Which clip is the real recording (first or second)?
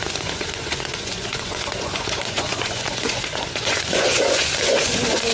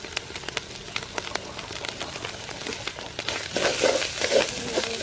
second